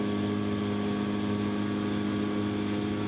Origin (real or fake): real